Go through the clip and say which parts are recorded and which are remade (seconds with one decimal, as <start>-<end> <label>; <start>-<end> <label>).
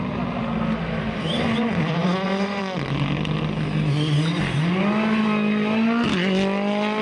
0.0-2.0 recorded; 2.0-2.6 remade; 2.6-7.0 recorded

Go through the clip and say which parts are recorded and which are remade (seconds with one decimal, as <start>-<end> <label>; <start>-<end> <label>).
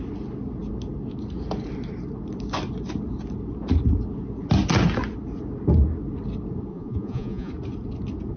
0.0-6.7 recorded; 6.7-7.5 remade; 7.5-8.4 recorded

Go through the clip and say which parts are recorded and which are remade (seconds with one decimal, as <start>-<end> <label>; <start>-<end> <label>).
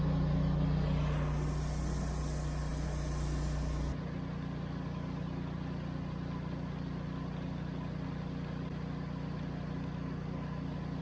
0.0-11.0 recorded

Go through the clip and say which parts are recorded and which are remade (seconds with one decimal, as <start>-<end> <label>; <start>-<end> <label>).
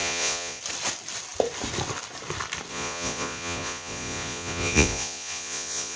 0.0-0.6 remade; 0.6-2.7 recorded; 2.7-6.0 remade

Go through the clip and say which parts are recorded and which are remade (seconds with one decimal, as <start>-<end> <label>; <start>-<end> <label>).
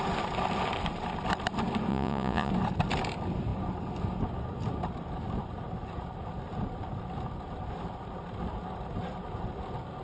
0.0-1.9 recorded; 1.9-2.5 remade; 2.5-10.0 recorded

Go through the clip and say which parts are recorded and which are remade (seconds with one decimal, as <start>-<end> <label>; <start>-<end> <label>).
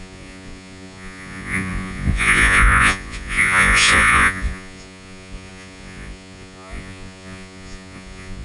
0.0-8.4 remade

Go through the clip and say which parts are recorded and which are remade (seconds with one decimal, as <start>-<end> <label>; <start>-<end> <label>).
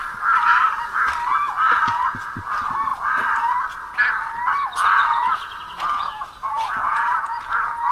0.0-5.0 recorded; 5.0-7.9 remade